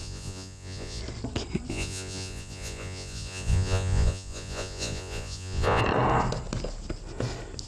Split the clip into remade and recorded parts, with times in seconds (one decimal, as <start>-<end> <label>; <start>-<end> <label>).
0.0-1.0 remade; 1.0-1.7 recorded; 1.7-5.8 remade; 5.8-7.7 recorded